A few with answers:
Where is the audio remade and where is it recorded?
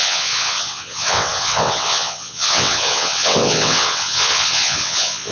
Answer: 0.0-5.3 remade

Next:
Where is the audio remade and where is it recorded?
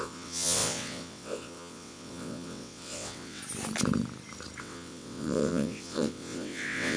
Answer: 0.0-3.4 remade; 3.4-4.6 recorded; 4.6-7.0 remade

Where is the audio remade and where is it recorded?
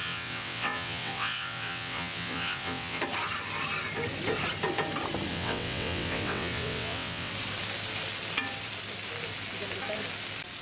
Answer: 0.0-3.0 remade; 3.0-5.3 recorded; 5.3-7.3 remade; 7.3-10.6 recorded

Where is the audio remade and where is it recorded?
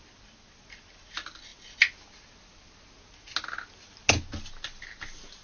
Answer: 0.0-5.4 recorded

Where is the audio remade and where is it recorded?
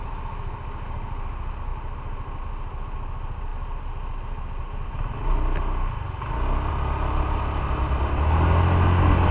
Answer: 0.0-9.3 recorded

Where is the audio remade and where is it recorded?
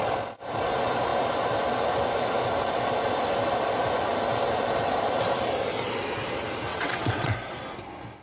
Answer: 0.0-6.7 recorded; 6.7-7.3 remade; 7.3-8.2 recorded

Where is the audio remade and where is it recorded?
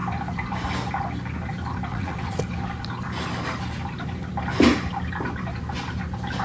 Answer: 0.0-1.9 recorded; 1.9-2.4 remade; 2.4-6.4 recorded